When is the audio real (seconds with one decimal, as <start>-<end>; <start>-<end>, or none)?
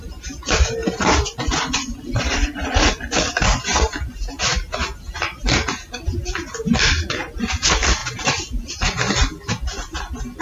0.0-0.8; 3.6-8.0; 10.0-10.4